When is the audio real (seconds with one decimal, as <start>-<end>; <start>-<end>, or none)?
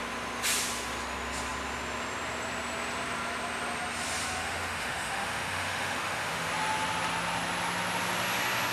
0.0-4.4; 6.5-8.7